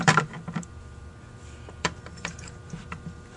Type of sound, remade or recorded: remade